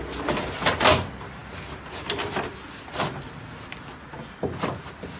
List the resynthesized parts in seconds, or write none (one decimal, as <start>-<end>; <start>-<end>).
none